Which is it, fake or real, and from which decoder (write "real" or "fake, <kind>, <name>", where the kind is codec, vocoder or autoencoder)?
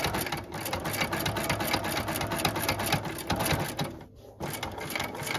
real